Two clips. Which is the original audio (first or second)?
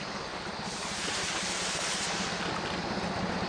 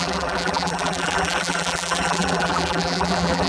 first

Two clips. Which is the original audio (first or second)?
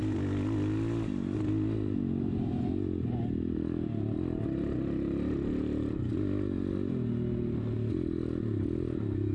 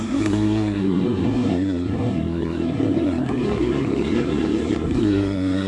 first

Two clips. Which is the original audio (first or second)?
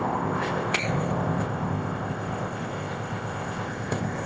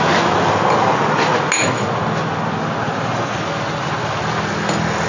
second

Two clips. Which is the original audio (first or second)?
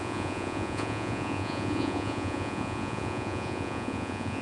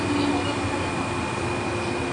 second